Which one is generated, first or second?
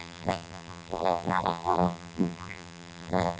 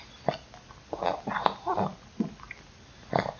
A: first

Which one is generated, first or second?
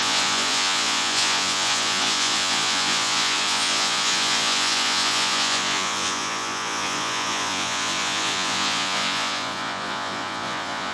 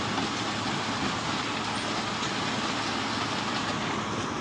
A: first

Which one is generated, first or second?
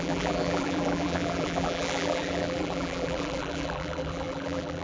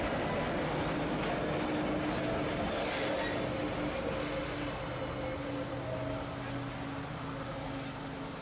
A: first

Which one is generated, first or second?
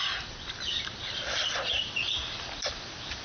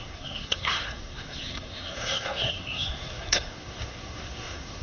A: second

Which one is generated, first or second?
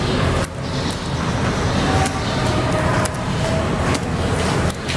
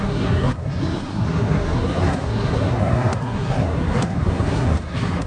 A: second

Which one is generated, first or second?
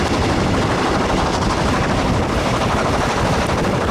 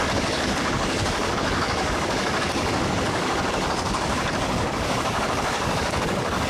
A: second